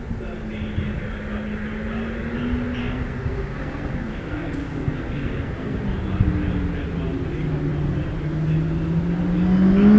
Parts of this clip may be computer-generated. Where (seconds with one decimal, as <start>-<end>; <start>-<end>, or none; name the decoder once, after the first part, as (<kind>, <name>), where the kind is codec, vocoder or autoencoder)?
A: 2.8-5.8 (codec, SNAC)